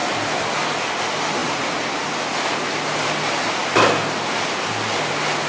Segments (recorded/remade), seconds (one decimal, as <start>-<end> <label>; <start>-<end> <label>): 0.0-1.4 recorded; 1.4-1.9 remade; 1.9-5.5 recorded